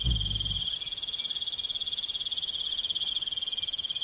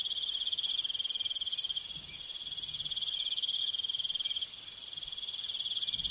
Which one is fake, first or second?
second